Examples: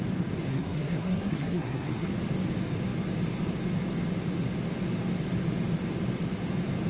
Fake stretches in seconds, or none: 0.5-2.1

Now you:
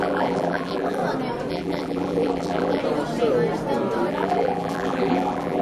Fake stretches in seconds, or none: 0.0-1.0; 1.5-2.8; 4.1-5.6

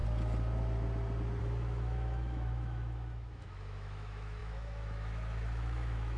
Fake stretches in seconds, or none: 1.4-6.2

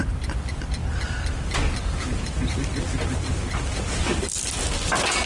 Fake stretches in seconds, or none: none

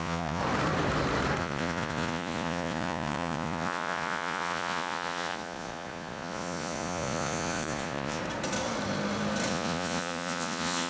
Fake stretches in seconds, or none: 0.0-0.4; 1.4-8.2; 9.5-10.9

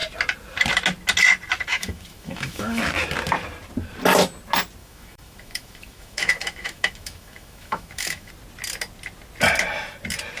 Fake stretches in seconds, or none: 1.7-2.8; 4.8-8.3

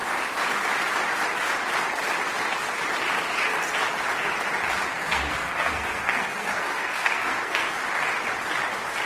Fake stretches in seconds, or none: 4.9-7.8